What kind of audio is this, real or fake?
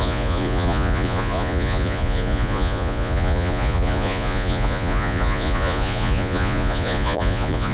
fake